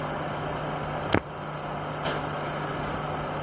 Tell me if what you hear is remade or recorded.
recorded